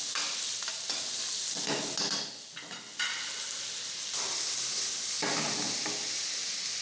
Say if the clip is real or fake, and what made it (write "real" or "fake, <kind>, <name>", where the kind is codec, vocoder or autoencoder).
real